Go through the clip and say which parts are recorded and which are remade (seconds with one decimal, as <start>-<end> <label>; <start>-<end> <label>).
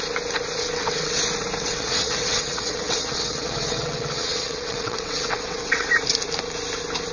0.0-0.6 recorded; 0.6-1.2 remade; 1.2-1.6 recorded; 1.6-5.9 remade; 5.9-7.1 recorded